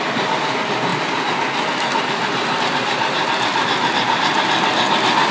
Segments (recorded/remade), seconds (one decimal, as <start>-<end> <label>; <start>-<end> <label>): 0.0-5.3 recorded